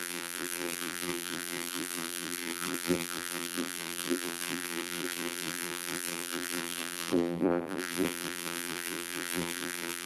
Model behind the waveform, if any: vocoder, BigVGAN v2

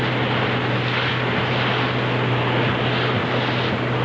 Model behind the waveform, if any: none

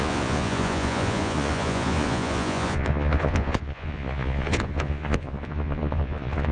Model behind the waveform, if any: vocoder, Vocos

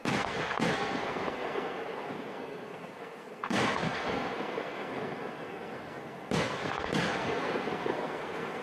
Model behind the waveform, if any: codec, SNAC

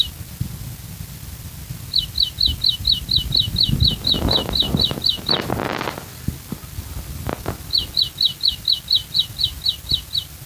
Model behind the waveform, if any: none